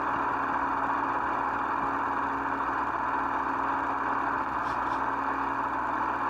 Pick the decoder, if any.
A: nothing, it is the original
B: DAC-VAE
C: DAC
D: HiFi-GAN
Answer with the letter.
A